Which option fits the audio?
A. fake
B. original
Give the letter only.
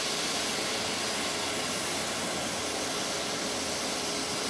B